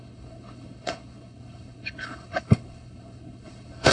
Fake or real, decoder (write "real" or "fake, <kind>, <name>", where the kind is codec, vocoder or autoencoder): fake, codec, HILCodec